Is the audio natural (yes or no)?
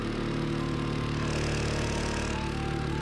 yes